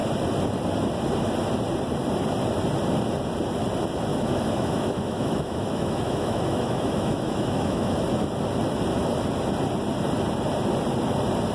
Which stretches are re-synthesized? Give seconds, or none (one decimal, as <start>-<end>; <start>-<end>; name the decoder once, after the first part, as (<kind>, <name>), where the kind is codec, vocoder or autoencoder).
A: 4.1-7.9 (autoencoder, DAC-VAE)